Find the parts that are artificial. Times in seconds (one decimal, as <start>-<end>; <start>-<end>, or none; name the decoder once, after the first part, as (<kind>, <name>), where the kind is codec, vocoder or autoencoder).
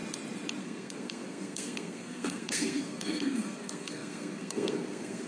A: 0.6-5.3 (codec, SNAC)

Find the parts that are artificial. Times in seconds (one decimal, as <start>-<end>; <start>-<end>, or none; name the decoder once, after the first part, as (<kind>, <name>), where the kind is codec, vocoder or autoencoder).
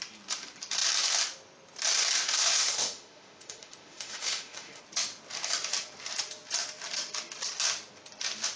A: 2.4-4.8 (autoencoder, DAC-VAE)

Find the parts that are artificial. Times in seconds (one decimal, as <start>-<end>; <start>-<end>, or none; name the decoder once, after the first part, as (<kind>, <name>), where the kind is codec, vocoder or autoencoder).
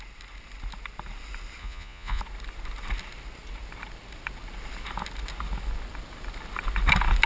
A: 1.6-2.2 (vocoder, Vocos)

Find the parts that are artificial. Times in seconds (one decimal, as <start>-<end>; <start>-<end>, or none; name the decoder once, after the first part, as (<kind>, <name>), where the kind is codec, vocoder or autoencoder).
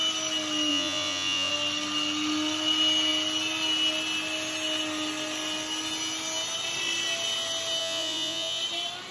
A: 0.7-1.5 (vocoder, Vocos); 7.8-8.6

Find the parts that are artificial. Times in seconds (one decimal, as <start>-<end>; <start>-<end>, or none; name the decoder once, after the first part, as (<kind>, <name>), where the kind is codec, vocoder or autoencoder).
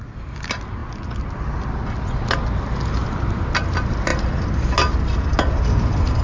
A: none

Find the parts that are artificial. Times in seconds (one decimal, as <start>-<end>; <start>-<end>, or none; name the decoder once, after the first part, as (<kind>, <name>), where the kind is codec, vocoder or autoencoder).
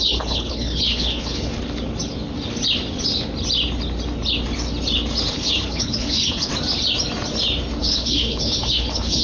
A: 0.0-1.5 (codec, HILCodec); 5.3-6.5; 7.8-9.2